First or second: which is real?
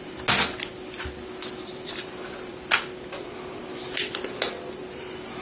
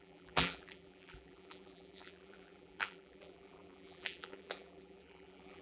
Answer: first